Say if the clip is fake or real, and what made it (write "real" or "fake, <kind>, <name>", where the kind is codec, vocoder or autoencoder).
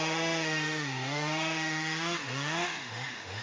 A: fake, autoencoder, DAC-VAE